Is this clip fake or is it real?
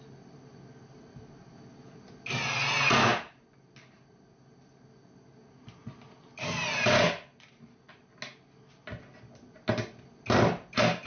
real